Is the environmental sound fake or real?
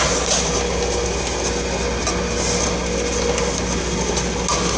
real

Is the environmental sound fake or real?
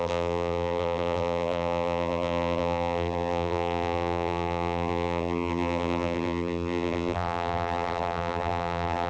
fake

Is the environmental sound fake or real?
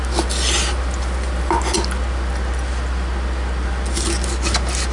real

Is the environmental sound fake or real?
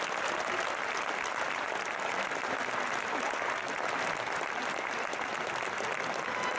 real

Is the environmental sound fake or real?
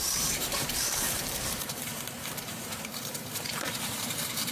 fake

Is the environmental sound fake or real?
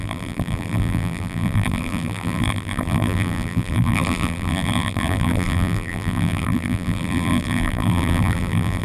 fake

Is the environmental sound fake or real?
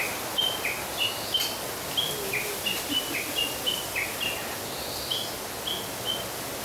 real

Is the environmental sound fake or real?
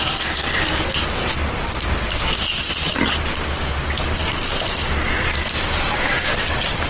real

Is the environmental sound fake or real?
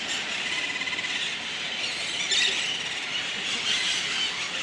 real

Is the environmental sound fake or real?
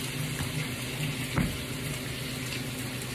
real